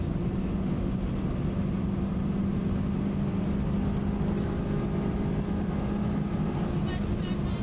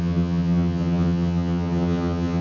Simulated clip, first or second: second